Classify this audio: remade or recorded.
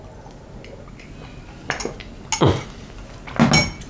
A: recorded